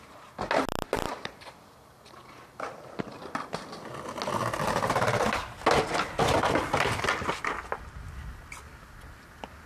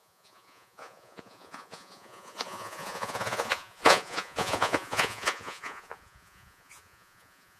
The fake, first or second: second